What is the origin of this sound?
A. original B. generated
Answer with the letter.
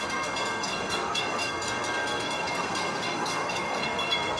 B